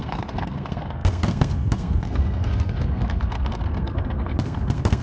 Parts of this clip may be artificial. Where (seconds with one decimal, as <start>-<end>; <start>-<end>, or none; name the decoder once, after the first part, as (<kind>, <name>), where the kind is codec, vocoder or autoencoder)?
0.0-5.0 (codec, SNAC)